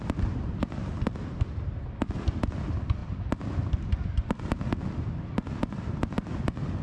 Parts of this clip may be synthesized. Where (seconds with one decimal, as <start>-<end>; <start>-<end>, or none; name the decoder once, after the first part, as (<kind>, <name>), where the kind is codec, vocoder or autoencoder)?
none